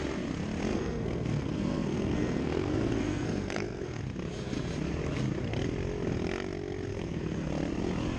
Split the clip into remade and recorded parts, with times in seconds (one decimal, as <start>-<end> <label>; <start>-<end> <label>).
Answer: 0.0-0.7 recorded; 0.7-4.0 remade; 4.0-6.9 recorded; 6.9-7.5 remade; 7.5-8.2 recorded